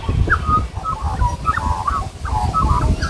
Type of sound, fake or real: real